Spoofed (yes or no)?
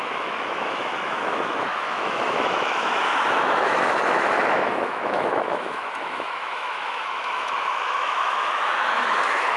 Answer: yes